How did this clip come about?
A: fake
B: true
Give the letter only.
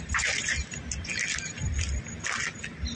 B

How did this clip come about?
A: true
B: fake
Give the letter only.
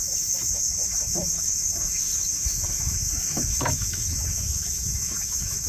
B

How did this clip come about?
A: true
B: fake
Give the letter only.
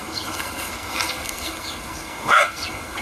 B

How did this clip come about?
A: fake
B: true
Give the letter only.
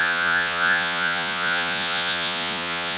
A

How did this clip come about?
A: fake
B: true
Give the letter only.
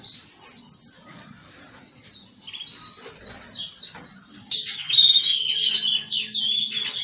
B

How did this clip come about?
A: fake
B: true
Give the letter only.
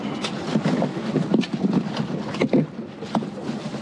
B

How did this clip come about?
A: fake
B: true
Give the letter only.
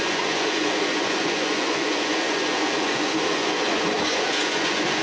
A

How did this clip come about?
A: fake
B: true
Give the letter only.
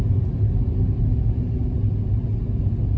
B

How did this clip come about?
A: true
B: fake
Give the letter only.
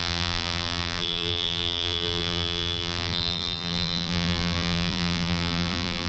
B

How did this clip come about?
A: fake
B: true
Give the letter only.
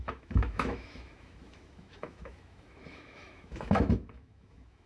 A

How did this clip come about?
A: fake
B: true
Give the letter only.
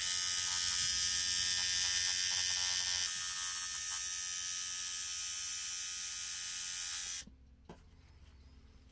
B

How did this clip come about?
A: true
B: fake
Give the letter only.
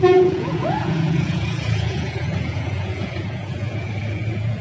B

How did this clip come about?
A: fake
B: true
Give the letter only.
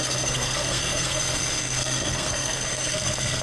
A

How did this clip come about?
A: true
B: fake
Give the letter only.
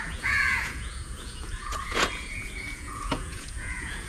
B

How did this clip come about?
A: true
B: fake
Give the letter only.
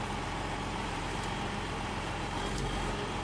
B